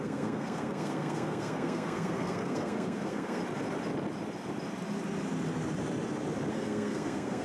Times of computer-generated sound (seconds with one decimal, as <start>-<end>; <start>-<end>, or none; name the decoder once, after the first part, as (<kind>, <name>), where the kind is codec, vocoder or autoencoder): 0.0-3.4 (codec, SNAC); 6.5-7.4